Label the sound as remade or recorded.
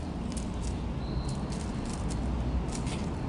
recorded